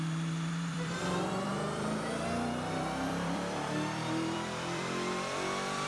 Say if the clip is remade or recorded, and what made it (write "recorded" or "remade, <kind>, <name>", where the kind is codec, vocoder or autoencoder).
remade, vocoder, BigVGAN v2